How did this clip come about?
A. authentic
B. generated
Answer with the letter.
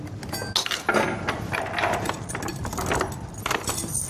A